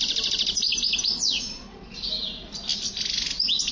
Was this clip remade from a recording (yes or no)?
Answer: no